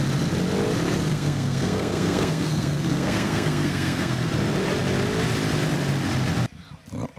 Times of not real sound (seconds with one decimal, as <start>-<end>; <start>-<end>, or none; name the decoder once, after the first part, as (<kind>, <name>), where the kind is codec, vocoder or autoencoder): 1.1-4.3 (codec, SNAC)